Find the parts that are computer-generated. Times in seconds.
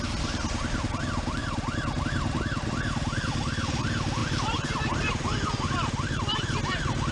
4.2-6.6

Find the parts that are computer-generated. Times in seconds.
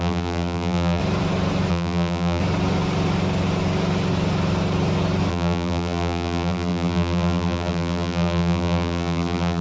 0.0-1.0; 1.7-2.4; 5.3-9.6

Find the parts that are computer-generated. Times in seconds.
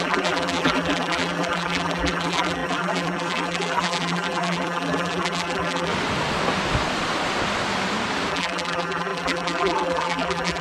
0.0-5.9; 8.3-10.6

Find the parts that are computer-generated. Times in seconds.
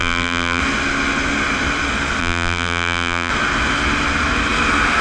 0.0-0.6; 2.2-3.3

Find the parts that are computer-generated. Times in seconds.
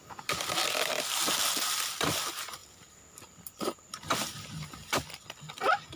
0.0-2.1; 2.6-5.4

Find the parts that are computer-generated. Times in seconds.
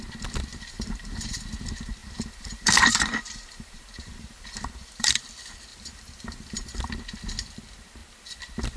0.5-1.4; 2.0-5.1; 5.7-6.9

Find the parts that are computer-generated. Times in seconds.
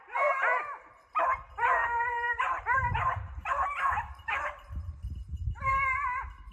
1.8-5.7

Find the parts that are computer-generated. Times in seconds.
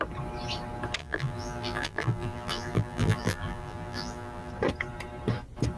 1.0-4.5